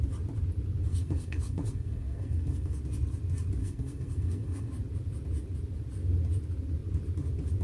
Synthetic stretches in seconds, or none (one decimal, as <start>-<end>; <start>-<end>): 0.9-2.8; 3.6-4.7